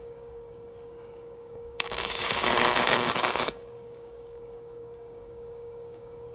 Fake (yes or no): yes